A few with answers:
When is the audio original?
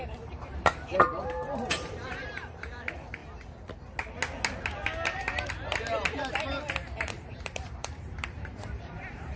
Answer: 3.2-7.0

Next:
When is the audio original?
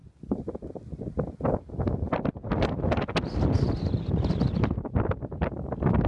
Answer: 0.0-6.1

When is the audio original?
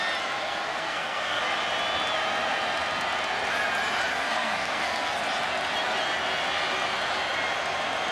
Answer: 0.0-0.4; 1.4-4.1; 5.2-8.1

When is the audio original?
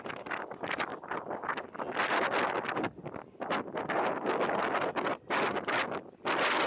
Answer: 0.0-6.7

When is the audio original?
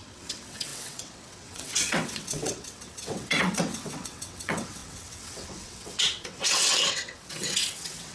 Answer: none